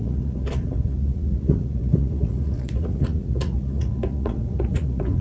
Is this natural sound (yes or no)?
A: no